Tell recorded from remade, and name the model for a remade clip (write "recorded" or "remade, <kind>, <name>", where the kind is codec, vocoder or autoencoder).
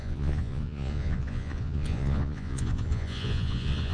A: remade, vocoder, Vocos